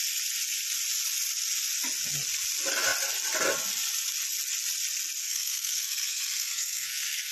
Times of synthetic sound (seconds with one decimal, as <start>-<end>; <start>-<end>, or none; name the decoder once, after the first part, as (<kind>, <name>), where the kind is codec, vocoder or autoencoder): 5.2-7.3 (codec, SNAC)